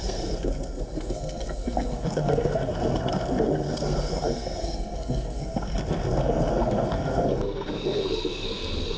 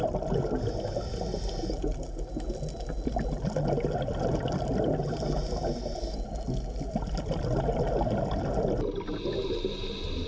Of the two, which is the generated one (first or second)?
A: first